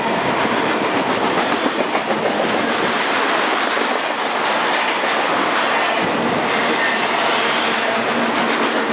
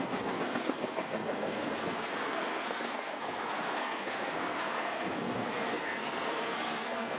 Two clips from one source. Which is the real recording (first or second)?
first